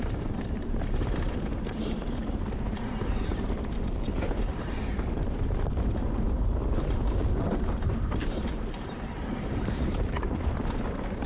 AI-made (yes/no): yes